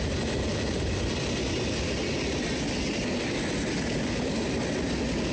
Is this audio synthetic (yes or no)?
no